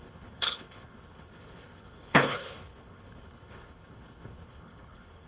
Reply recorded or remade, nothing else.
remade